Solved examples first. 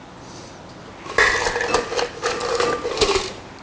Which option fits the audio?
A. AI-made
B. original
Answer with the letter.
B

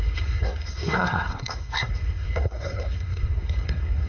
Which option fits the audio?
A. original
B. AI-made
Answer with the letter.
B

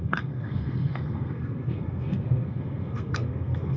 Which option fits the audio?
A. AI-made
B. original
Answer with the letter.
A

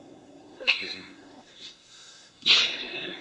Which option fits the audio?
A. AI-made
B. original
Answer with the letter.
A